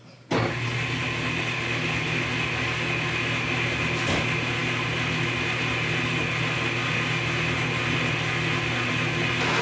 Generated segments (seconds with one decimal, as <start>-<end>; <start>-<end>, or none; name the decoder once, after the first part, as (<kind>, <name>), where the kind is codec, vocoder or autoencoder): none